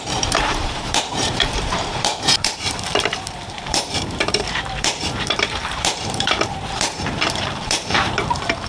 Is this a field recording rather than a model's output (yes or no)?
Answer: no